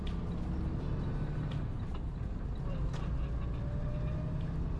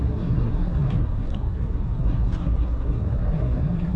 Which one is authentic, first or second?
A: first